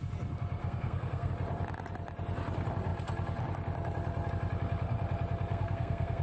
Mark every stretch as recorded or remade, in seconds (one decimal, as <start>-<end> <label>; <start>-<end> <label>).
0.0-0.6 recorded; 0.6-1.3 remade; 1.3-5.5 recorded; 5.5-6.2 remade